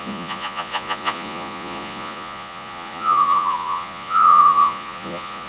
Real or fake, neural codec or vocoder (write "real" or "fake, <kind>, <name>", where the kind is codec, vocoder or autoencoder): fake, vocoder, Vocos